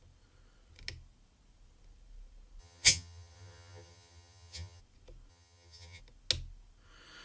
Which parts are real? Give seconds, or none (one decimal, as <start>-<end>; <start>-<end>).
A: 0.0-2.6; 4.8-5.3; 6.0-7.2